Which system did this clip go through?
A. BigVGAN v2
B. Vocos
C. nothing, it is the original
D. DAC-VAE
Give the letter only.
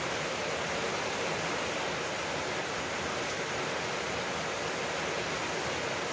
C